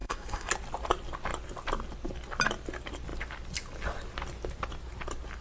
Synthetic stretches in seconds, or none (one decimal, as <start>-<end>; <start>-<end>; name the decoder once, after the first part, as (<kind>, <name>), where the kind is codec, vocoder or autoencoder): 0.0-0.5 (codec, SNAC)